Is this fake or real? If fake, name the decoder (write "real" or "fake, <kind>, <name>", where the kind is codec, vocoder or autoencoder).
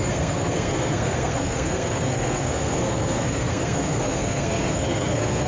fake, codec, SNAC